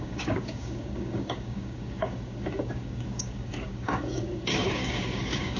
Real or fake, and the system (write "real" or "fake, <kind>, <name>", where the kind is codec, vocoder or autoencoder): fake, codec, DAC